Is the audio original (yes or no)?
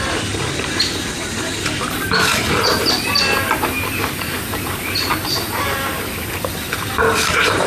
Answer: yes